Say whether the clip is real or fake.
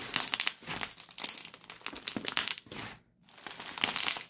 real